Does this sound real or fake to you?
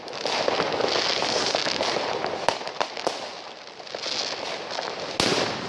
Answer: real